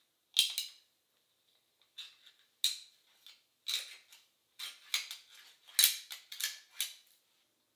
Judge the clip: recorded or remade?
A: recorded